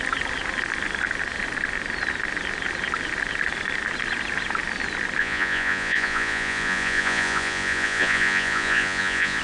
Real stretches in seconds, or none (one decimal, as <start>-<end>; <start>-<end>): 0.0-5.2